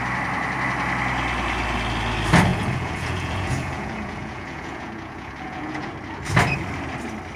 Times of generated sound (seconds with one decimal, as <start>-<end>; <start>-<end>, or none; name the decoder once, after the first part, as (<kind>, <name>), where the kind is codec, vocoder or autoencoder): 2.5-5.9 (vocoder, Vocos)